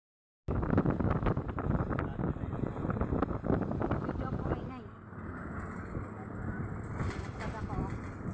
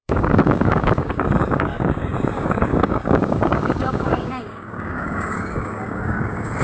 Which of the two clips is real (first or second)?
first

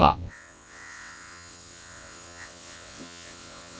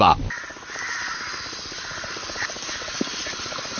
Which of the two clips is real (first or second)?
second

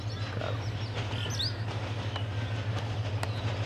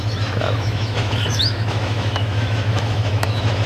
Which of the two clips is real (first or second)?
first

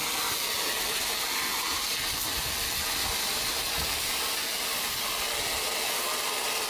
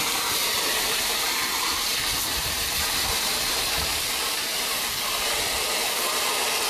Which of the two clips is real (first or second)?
first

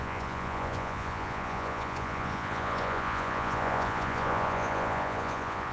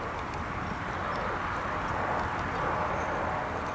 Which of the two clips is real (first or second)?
second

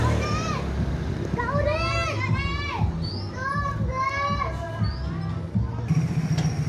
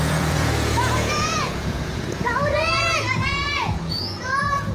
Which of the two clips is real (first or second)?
first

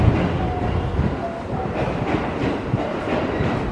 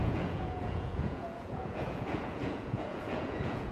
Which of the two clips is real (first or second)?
first